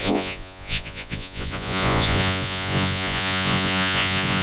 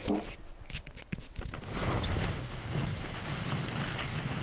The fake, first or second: first